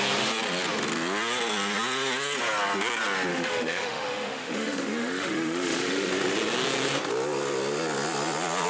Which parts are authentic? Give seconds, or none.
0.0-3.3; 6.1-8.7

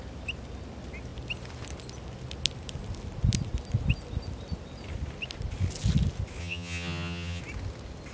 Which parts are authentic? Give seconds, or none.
0.0-6.4; 7.4-8.1